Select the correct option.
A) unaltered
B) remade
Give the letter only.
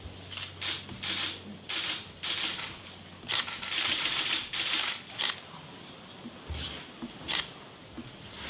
A